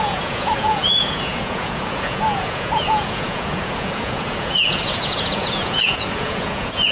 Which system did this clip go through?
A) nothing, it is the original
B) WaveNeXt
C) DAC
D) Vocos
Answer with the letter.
D